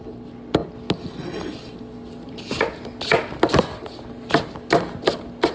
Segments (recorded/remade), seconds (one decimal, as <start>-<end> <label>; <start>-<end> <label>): 0.0-5.5 recorded